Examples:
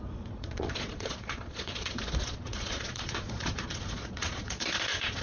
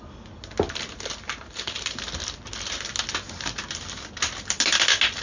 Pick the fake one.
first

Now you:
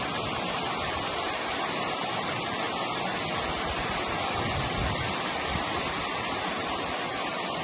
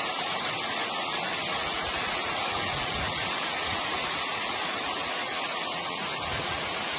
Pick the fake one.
second